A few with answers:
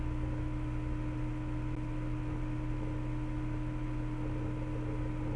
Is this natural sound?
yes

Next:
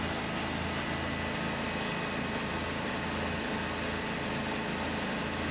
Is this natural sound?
yes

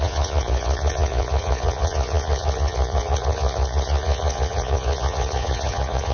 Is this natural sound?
no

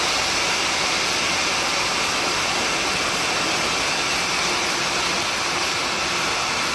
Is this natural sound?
yes